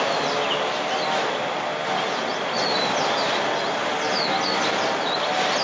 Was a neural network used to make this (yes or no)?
no